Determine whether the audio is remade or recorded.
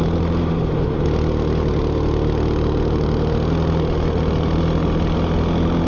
recorded